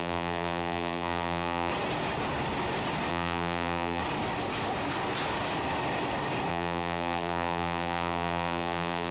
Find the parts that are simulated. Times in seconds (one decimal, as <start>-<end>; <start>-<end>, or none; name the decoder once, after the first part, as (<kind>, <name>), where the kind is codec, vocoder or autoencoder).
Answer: 0.0-1.7 (vocoder, BigVGAN v2); 3.1-4.0; 6.5-9.1